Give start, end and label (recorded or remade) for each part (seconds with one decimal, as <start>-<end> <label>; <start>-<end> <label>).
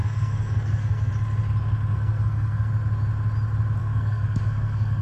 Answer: 0.0-1.1 remade; 1.1-1.9 recorded; 1.9-2.7 remade; 2.7-3.8 recorded; 3.8-5.0 remade